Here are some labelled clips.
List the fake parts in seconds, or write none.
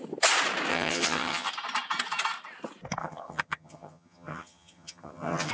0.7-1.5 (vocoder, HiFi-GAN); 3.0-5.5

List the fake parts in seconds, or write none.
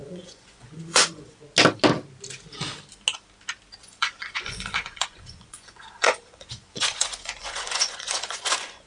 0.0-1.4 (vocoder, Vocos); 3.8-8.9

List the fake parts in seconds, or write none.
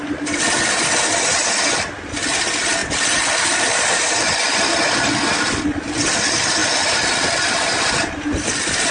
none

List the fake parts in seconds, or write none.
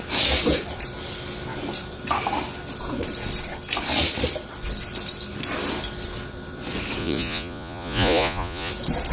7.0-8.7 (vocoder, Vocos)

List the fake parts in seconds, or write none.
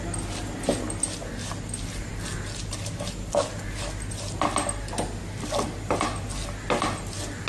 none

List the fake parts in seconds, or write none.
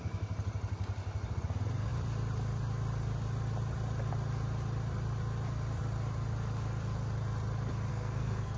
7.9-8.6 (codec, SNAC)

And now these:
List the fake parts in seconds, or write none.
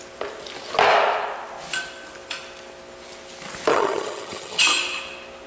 3.7-4.6 (vocoder, HiFi-GAN)